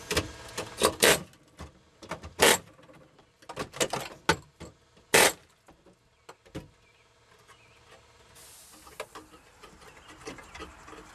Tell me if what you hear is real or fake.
real